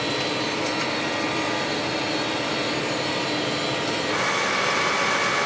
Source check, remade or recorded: recorded